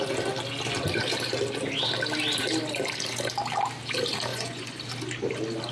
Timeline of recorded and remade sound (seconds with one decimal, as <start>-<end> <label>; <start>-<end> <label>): 0.0-4.3 recorded; 4.3-4.8 remade; 4.8-5.7 recorded